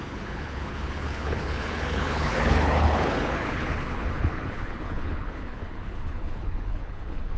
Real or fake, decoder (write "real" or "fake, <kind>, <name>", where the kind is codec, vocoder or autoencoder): fake, codec, HILCodec